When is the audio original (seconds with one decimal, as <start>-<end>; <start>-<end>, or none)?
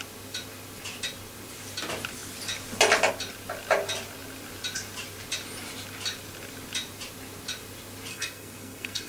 0.0-8.1